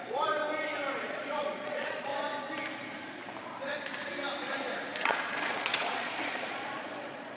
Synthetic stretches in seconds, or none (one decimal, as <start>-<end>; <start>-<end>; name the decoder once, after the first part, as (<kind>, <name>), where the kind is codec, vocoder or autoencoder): 0.0-0.4 (vocoder, Vocos); 1.1-2.1; 5.0-7.4